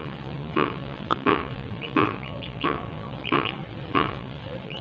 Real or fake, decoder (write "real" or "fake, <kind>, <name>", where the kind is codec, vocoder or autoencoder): fake, vocoder, WaveNeXt